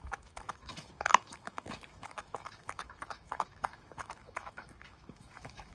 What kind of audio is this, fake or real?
fake